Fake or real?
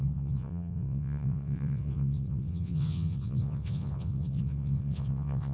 fake